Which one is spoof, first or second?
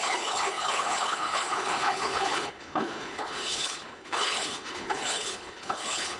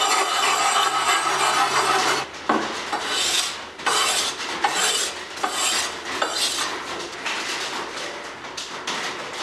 first